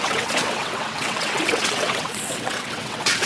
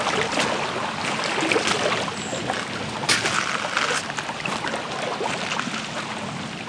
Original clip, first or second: second